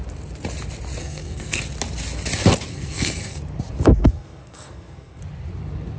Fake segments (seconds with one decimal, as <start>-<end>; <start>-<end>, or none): 1.0-1.6; 2.7-3.4; 4.0-5.2

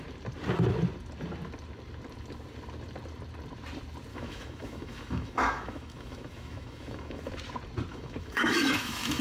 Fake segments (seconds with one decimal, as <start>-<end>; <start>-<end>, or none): 4.1-7.3; 7.9-9.2

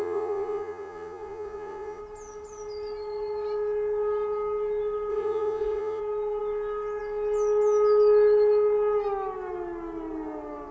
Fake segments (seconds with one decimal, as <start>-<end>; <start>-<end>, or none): 0.0-2.0; 5.1-6.0

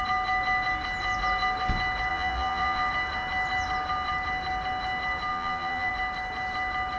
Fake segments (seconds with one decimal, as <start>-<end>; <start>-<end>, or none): 2.1-2.9; 5.3-5.9